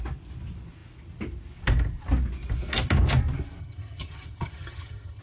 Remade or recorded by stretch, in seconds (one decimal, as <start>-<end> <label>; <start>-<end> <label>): 0.0-3.6 recorded; 3.6-5.2 remade